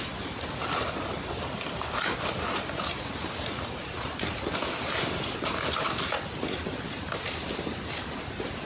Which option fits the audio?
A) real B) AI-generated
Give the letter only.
A